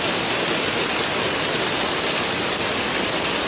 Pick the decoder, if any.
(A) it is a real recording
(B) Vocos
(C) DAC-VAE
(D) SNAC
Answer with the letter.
A